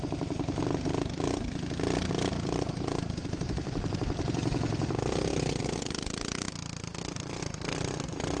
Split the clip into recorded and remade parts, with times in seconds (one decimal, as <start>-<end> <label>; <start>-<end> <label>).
0.0-2.7 recorded; 2.7-4.4 remade; 4.4-5.3 recorded; 5.3-8.4 remade